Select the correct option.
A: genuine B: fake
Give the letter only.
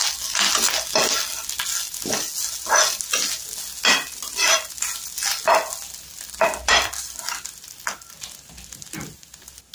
A